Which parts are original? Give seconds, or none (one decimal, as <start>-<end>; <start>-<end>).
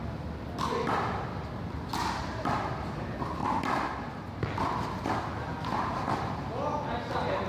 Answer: 0.0-7.5